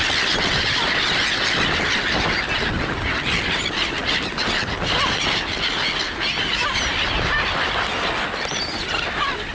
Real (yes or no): yes